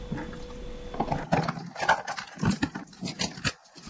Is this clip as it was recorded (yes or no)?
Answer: yes